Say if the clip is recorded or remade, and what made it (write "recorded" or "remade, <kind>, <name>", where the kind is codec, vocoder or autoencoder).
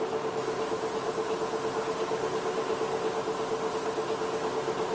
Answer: recorded